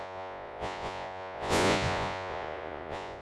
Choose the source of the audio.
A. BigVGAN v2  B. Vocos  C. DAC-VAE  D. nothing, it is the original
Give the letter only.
B